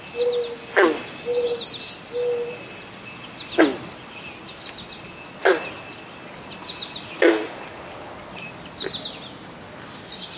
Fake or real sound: real